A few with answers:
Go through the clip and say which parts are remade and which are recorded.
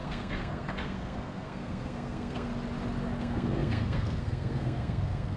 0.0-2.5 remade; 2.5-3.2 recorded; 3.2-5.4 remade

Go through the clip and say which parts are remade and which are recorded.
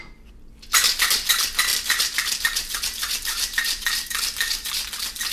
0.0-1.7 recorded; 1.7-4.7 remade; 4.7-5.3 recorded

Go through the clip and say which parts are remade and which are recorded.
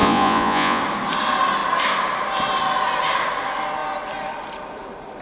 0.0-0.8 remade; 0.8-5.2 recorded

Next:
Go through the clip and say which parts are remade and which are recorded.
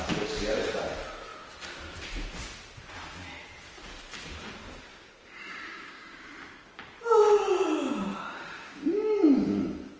0.0-4.9 recorded; 4.9-6.3 remade; 6.3-8.1 recorded; 8.1-9.6 remade; 9.6-10.0 recorded